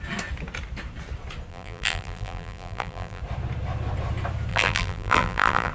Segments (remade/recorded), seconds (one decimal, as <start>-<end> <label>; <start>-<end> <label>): 0.0-1.5 recorded; 1.5-3.2 remade; 3.2-4.5 recorded; 4.5-5.7 remade